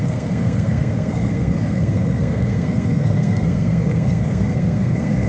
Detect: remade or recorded remade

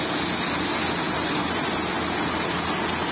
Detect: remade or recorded recorded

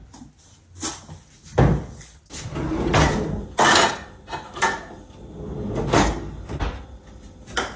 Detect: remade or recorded recorded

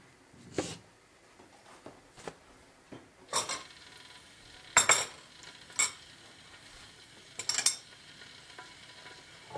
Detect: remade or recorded recorded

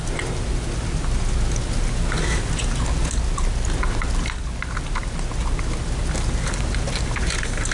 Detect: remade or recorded recorded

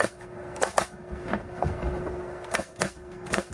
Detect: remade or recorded remade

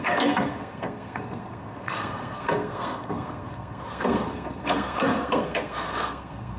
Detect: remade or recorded remade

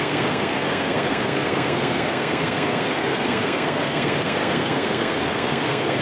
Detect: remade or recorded remade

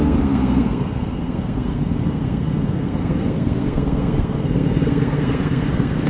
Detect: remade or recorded remade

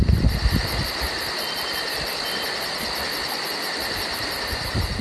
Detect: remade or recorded recorded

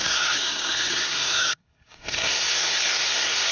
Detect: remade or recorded remade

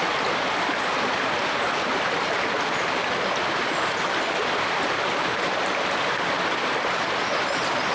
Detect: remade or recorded recorded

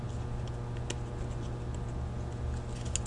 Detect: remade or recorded recorded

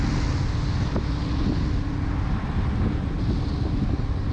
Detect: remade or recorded recorded